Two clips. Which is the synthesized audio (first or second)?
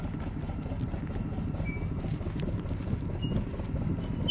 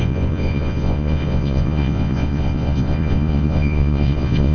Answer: second